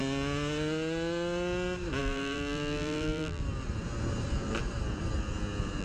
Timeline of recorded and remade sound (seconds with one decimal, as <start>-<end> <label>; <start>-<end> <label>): 0.0-2.0 recorded; 2.0-3.4 remade; 3.4-5.8 recorded

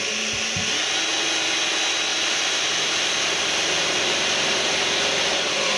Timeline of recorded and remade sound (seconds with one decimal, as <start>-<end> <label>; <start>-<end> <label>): 0.0-2.1 recorded; 2.1-5.8 remade

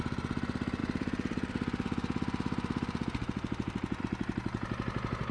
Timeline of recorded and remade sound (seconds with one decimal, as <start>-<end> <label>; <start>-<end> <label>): 0.0-0.8 recorded; 0.8-4.0 remade; 4.0-5.3 recorded

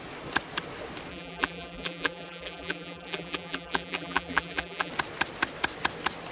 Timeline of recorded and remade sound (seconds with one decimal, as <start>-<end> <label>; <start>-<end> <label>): 0.0-1.1 recorded; 1.1-4.9 remade; 4.9-6.3 recorded

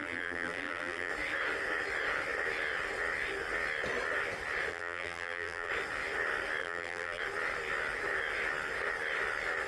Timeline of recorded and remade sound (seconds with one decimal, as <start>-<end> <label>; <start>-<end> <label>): 0.0-1.1 remade; 1.1-4.7 recorded; 4.7-5.7 remade; 5.7-6.6 recorded; 6.6-7.2 remade; 7.2-9.7 recorded

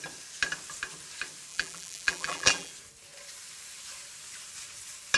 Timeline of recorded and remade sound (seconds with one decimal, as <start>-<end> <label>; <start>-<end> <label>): 0.0-1.5 recorded; 1.5-2.7 remade; 2.7-5.2 recorded

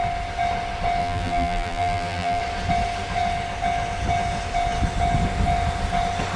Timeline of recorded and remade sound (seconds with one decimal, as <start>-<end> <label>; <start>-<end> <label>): 0.0-1.0 recorded; 1.0-2.4 remade; 2.4-6.4 recorded

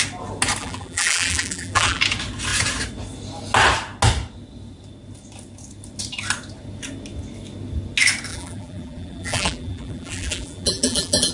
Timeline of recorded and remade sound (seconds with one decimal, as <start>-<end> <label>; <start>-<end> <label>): 0.0-0.6 recorded; 0.6-2.0 remade; 2.0-8.3 recorded; 8.3-11.3 remade